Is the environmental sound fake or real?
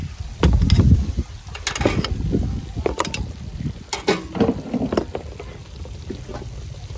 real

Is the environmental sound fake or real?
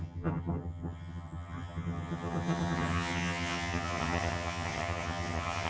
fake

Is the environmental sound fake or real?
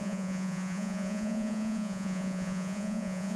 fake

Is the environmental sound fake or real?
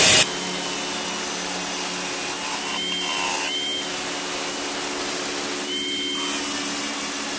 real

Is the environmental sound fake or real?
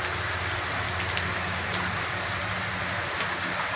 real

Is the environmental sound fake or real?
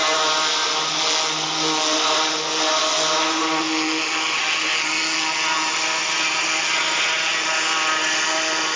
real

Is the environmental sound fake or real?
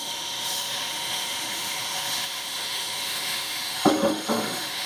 fake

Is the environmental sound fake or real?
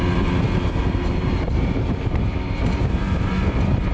fake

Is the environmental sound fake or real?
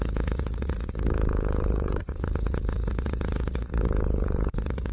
fake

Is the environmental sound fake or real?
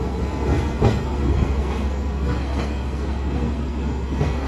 fake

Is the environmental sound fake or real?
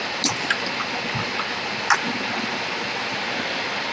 real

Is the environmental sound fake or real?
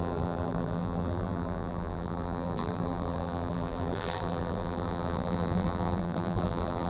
fake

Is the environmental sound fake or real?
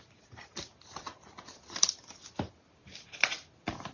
real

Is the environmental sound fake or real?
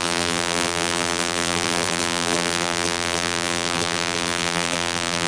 fake